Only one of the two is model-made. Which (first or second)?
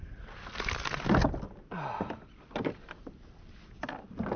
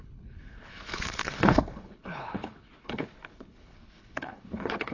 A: second